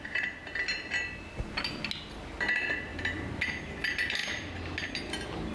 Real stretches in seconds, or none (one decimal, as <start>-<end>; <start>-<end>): 0.0-5.5